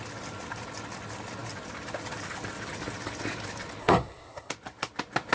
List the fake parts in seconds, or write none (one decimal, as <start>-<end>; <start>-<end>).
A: 3.8-4.5